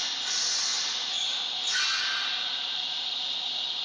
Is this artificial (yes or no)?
no